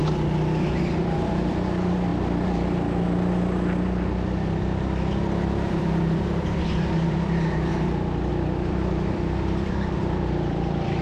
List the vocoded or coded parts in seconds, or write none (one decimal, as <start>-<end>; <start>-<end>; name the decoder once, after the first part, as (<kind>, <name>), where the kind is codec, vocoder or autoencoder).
1.0-2.1 (vocoder, BigVGAN v2); 5.7-7.7; 8.3-11.0